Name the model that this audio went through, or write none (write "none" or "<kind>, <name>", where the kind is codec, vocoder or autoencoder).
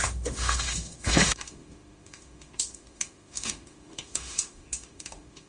autoencoder, DAC-VAE